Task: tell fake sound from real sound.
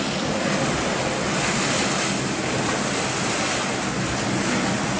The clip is real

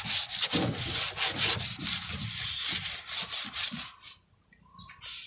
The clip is real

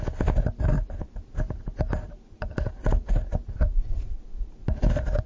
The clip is real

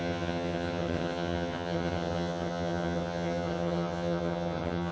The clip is fake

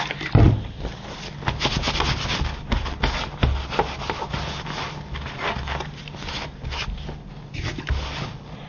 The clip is real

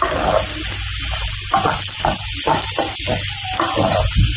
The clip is real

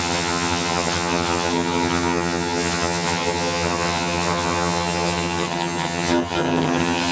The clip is fake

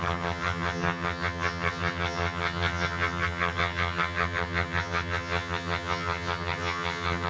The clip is fake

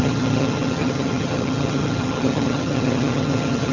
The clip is fake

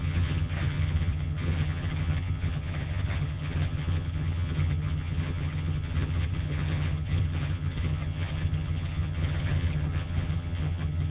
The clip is fake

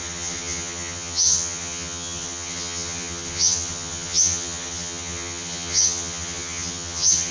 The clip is fake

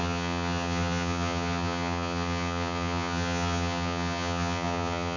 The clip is fake